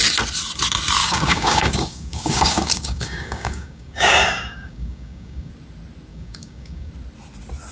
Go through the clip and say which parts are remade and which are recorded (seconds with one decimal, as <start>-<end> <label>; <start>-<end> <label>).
0.0-1.0 recorded; 1.0-5.5 remade; 5.5-6.1 recorded; 6.1-6.9 remade; 6.9-7.7 recorded